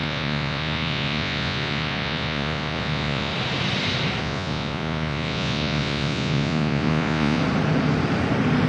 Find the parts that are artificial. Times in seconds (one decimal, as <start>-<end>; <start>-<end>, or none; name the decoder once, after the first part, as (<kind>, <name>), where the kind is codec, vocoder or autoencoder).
0.0-3.3 (vocoder, Vocos); 4.2-7.4